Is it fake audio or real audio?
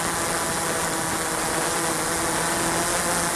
real